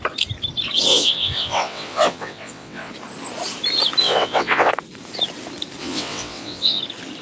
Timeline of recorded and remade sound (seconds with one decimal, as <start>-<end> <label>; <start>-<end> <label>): 0.0-0.9 recorded; 0.9-2.9 remade; 2.9-4.0 recorded; 4.0-4.7 remade; 4.7-5.8 recorded; 5.8-6.8 remade; 6.8-7.2 recorded